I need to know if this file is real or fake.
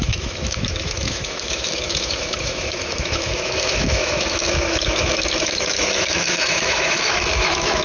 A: fake